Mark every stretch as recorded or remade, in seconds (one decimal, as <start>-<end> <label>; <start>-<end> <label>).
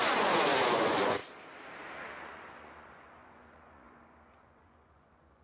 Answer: 0.0-1.2 remade; 1.2-2.2 recorded; 2.2-5.4 remade